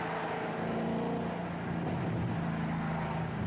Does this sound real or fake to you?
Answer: real